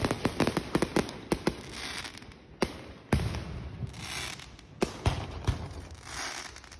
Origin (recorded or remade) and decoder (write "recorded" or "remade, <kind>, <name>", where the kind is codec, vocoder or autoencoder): recorded